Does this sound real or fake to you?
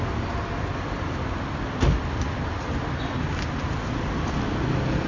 real